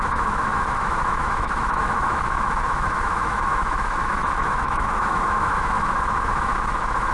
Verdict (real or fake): fake